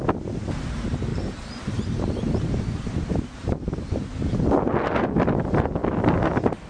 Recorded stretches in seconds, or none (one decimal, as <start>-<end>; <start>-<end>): 0.0-1.1; 3.9-6.7